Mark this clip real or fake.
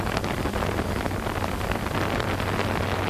real